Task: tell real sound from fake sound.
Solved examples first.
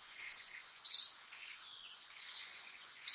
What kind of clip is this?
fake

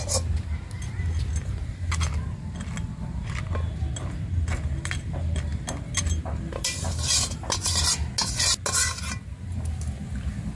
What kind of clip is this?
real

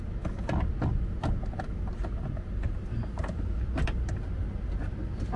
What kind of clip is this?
real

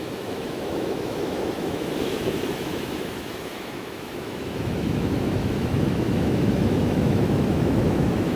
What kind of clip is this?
fake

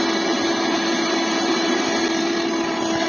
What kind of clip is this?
real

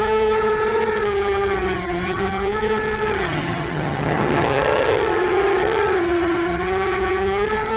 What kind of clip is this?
fake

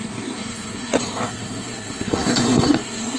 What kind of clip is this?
fake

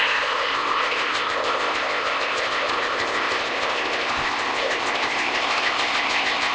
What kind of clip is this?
fake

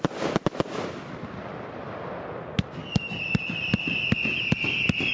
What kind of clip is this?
real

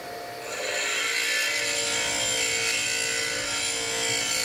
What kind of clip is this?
real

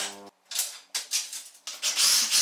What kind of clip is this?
real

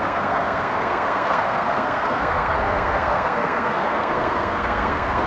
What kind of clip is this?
fake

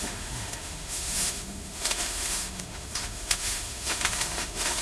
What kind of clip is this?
fake